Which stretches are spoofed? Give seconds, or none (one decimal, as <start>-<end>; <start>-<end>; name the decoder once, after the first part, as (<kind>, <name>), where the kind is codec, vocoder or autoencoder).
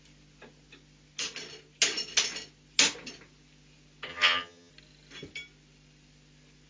4.1-4.7 (vocoder, HiFi-GAN)